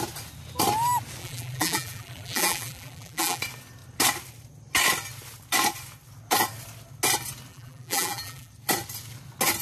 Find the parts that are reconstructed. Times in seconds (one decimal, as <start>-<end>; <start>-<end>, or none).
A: 1.2-3.4; 7.5-8.5